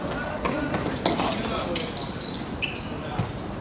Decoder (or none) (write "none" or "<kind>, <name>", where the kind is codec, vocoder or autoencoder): none